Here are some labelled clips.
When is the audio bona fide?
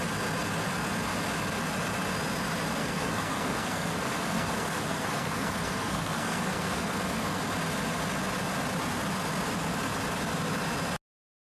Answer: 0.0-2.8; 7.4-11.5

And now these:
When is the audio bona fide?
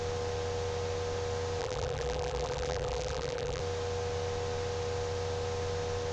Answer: 0.0-1.6; 3.6-6.1